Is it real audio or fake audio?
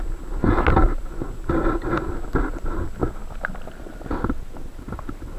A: real